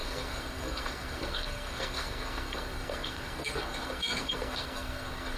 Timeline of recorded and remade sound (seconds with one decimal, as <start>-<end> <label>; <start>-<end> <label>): 0.0-5.4 remade